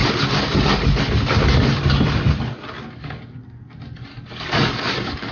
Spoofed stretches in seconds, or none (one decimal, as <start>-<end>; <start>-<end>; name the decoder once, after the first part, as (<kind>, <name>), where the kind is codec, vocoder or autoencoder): 4.1-5.3 (codec, DAC)